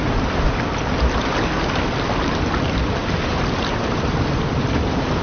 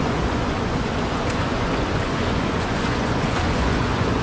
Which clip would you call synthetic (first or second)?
second